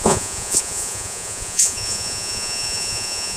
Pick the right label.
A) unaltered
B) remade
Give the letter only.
B